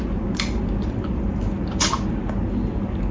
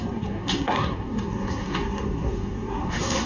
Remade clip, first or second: second